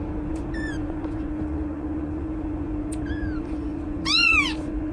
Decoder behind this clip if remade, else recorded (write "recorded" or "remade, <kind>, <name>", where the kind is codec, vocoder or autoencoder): remade, vocoder, Vocos